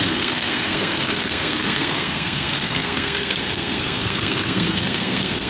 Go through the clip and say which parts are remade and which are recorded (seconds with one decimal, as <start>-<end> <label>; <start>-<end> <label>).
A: 0.0-5.5 remade